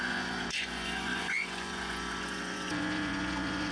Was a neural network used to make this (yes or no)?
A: yes